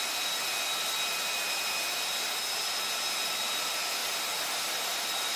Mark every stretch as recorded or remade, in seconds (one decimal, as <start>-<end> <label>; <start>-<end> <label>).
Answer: 0.0-4.0 recorded; 4.0-5.4 remade